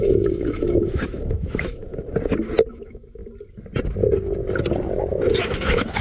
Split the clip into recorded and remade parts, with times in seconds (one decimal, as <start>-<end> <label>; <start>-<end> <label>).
0.0-1.9 remade; 1.9-2.7 recorded; 2.7-3.2 remade; 3.2-5.4 recorded; 5.4-6.0 remade